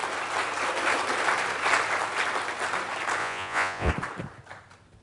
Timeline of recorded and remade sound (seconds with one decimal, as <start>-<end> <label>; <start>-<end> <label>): 0.0-3.2 recorded; 3.2-3.9 remade; 3.9-5.0 recorded